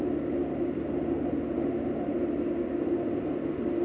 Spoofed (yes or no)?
no